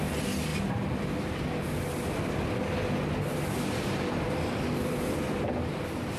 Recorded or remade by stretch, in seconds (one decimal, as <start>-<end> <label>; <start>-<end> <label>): 0.0-6.2 recorded